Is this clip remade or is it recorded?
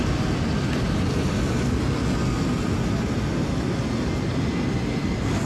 recorded